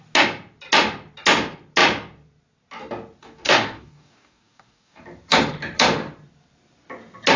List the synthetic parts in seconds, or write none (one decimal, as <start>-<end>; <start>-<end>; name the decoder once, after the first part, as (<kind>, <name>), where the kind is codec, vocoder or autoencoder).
3.2-5.0 (codec, DAC)